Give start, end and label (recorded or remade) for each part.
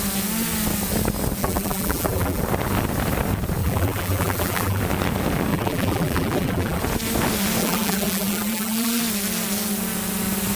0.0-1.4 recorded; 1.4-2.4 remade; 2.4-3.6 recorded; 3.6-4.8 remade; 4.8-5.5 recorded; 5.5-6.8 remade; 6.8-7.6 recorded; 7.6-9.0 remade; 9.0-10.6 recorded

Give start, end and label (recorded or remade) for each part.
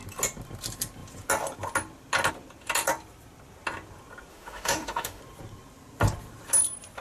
0.0-4.3 recorded; 4.3-5.2 remade; 5.2-7.0 recorded